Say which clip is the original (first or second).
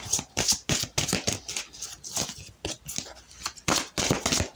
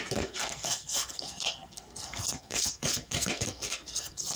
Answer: first